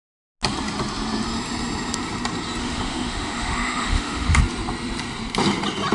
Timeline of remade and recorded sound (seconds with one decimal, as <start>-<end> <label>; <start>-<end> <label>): 0.0-2.6 recorded; 2.6-4.4 remade; 4.4-5.9 recorded